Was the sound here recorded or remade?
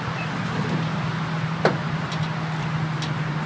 recorded